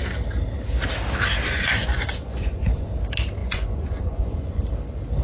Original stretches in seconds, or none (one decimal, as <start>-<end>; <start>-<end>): 0.0-1.4; 2.9-3.4; 4.6-5.2

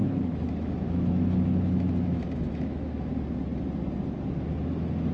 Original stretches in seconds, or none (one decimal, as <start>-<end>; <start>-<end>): 3.1-5.1